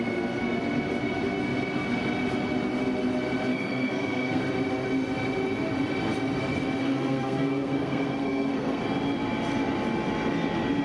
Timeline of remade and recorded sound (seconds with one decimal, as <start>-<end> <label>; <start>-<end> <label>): 0.0-3.5 recorded; 3.5-4.4 remade; 4.4-6.8 recorded; 6.8-8.8 remade; 8.8-10.8 recorded